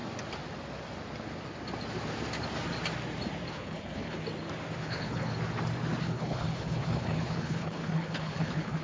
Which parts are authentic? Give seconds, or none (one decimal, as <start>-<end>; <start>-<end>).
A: 0.0-3.5; 4.2-4.8; 5.3-6.0

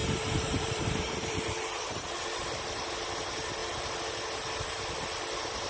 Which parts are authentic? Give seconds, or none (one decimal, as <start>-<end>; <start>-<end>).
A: 1.8-5.7

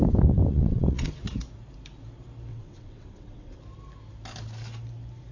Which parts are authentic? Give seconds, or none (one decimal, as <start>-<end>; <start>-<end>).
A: 0.0-0.5; 1.1-2.5; 3.6-5.3